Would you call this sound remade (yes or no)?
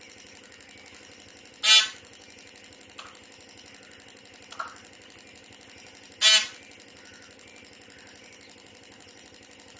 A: no